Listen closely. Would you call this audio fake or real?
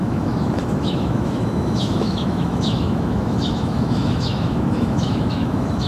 fake